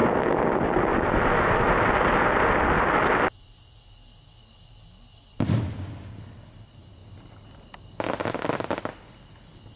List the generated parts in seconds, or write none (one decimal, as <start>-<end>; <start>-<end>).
none

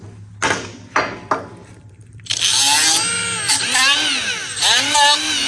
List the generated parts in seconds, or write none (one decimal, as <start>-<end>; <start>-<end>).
1.6-2.4

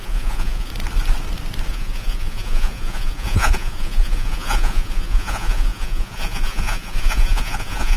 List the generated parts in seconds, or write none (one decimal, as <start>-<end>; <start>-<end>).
0.0-0.7; 1.7-8.0